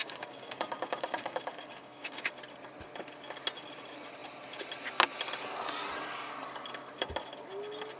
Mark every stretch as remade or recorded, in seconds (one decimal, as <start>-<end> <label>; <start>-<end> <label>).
0.0-2.3 remade; 2.3-8.0 recorded